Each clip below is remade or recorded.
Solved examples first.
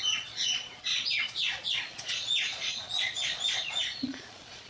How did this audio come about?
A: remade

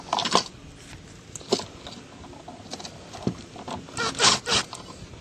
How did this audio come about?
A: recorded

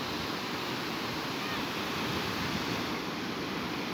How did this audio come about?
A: recorded